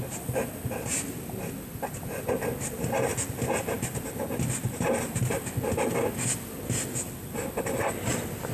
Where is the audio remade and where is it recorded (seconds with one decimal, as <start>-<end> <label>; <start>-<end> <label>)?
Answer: 0.0-8.5 recorded